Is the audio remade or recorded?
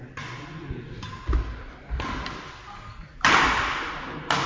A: recorded